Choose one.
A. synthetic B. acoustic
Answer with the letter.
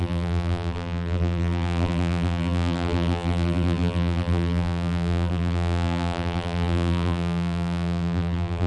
A